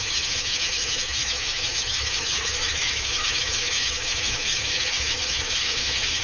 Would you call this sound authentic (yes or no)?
no